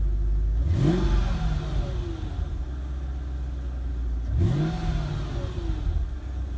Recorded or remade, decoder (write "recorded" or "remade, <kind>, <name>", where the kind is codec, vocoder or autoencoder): recorded